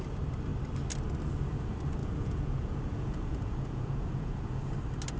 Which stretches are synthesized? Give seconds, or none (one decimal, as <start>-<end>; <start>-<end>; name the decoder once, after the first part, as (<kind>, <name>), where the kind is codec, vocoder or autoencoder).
2.0-4.7 (vocoder, Vocos)